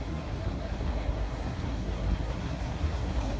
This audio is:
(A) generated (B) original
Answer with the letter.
A